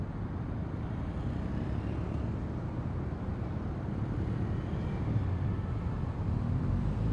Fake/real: real